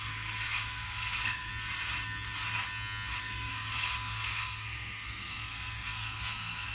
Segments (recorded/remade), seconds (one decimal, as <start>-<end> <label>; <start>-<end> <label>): 0.0-1.5 remade; 1.5-3.2 recorded; 3.2-6.7 remade